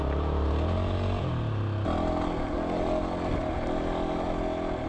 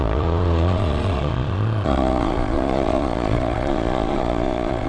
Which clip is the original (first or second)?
first